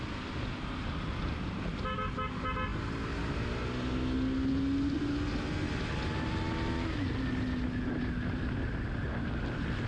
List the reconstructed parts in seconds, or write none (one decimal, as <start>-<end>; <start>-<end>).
none